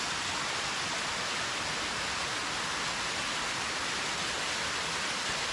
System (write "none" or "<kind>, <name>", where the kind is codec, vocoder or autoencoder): none